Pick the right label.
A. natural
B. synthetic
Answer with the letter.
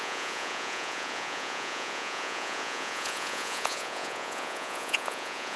B